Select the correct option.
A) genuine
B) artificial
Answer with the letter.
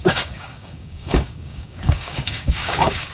B